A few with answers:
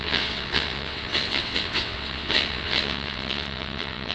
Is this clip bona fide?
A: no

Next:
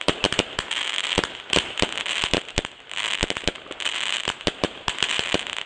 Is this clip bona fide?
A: yes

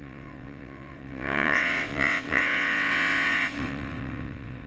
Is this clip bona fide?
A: no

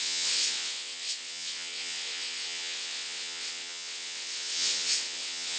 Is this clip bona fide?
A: no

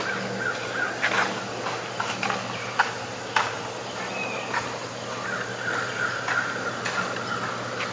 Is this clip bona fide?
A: yes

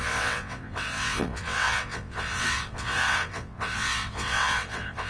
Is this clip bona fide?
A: no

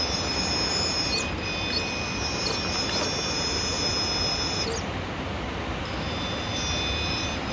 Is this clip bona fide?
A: yes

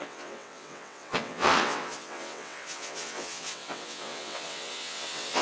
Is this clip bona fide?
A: no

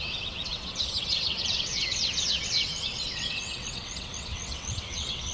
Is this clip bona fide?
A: no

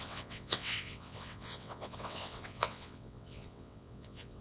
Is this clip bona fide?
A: no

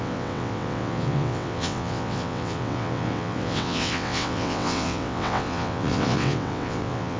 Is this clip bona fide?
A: no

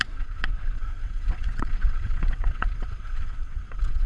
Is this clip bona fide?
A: no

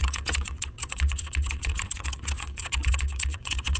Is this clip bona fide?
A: no